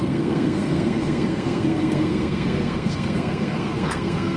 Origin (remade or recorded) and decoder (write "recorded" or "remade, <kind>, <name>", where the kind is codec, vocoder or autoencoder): remade, codec, SNAC